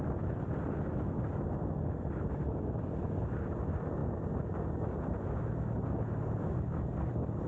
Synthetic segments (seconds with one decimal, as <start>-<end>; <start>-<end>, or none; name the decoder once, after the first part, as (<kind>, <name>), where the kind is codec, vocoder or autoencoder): none